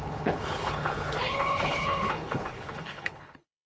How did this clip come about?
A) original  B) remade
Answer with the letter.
B